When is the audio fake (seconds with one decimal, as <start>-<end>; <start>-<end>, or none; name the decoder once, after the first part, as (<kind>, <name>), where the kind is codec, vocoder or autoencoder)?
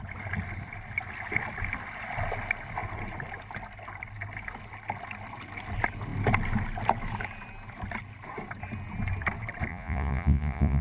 9.7-10.8 (vocoder, Vocos)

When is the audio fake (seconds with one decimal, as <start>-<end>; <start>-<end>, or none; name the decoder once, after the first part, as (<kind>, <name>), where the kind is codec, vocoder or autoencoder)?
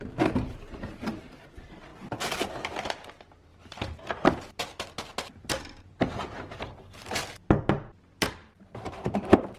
none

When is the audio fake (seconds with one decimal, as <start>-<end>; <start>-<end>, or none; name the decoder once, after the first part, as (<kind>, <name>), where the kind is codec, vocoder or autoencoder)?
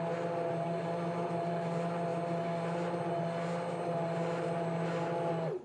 none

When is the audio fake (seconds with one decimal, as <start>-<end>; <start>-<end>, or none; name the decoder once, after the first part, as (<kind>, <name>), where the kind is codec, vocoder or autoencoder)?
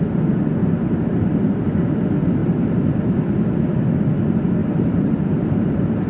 0.6-1.6 (vocoder, BigVGAN v2); 2.4-2.9; 4.6-6.1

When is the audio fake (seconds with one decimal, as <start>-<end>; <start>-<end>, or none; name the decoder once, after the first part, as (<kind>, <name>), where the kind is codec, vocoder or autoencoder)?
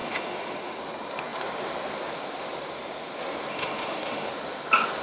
0.0-0.8 (autoencoder, DAC-VAE); 3.5-4.3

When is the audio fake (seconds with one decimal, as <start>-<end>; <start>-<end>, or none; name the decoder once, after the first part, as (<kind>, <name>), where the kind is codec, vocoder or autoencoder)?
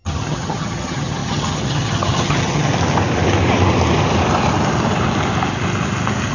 0.0-2.7 (vocoder, HiFi-GAN)